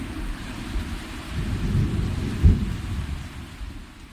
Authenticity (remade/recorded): recorded